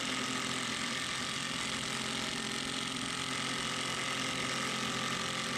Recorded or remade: recorded